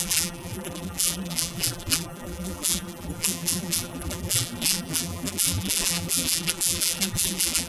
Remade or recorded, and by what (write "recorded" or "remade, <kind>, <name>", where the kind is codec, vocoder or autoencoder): remade, vocoder, BigVGAN v2